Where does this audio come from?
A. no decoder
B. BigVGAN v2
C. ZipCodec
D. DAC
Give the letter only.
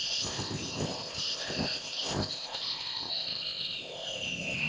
C